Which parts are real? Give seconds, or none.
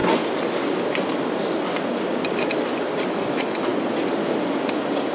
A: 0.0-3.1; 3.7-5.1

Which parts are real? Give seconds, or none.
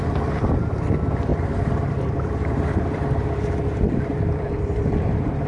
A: 3.0-4.1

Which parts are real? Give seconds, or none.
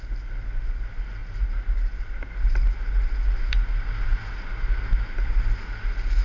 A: 0.0-1.2; 2.2-6.2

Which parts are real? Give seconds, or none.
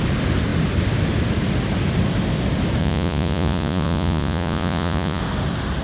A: 0.0-2.8; 5.2-5.8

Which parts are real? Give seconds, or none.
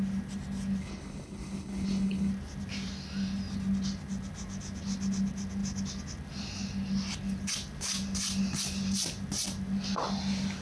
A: 0.0-0.8; 2.3-10.6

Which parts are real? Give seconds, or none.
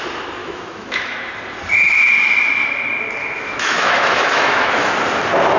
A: 0.0-0.4; 1.3-3.2; 4.9-5.6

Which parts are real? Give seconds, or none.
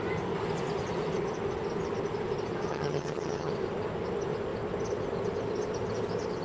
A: 0.0-2.7; 3.5-6.4